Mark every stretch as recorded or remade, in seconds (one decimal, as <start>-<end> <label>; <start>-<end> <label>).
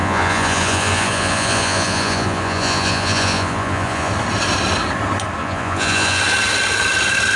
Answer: 0.0-4.1 remade; 4.1-5.4 recorded; 5.4-6.2 remade; 6.2-7.4 recorded